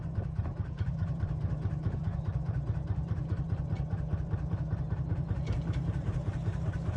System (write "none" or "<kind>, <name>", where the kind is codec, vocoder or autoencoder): vocoder, BigVGAN v2